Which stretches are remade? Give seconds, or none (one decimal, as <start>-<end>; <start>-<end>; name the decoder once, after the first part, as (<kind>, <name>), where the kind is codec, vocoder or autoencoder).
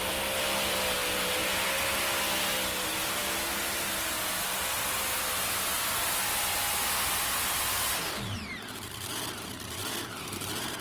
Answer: none